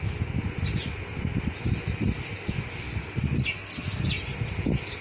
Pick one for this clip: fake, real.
real